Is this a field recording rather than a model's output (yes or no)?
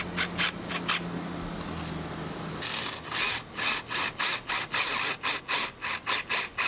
yes